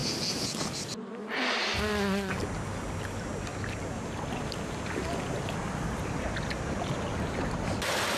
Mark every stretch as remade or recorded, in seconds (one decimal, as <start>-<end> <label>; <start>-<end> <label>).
0.0-8.2 recorded